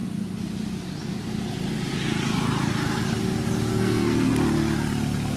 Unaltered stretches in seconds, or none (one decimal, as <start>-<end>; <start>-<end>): 0.0-3.7; 4.3-5.4